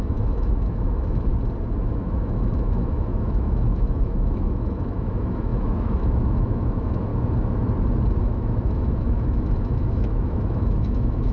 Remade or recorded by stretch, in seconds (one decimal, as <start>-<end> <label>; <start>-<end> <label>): 0.0-1.3 remade; 1.3-1.8 recorded; 1.8-7.1 remade; 7.1-8.2 recorded; 8.2-11.3 remade